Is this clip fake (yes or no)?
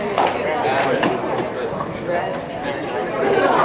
no